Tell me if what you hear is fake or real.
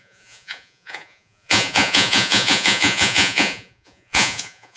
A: fake